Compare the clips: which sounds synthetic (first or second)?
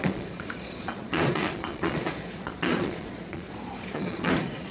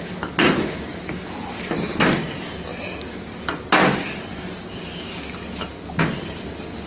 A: first